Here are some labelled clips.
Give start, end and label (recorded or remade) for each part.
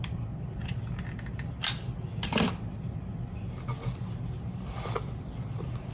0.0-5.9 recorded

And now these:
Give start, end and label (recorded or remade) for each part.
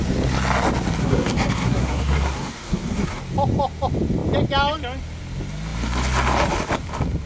0.0-1.0 recorded; 1.0-3.2 remade; 3.2-7.3 recorded